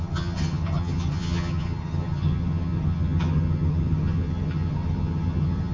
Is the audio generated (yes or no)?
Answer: yes